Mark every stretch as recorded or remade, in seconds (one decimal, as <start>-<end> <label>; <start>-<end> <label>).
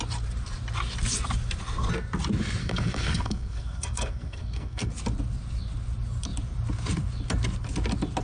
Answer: 0.0-2.6 recorded; 2.6-4.9 remade; 4.9-8.2 recorded